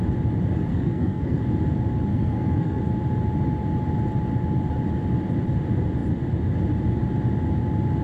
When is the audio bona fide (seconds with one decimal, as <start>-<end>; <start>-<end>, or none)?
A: 0.0-0.7; 1.4-2.1; 2.8-8.0